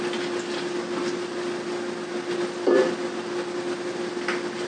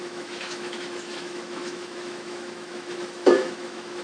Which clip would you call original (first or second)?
first